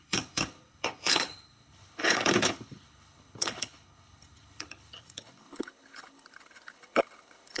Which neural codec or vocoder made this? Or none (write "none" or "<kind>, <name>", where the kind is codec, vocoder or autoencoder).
codec, HILCodec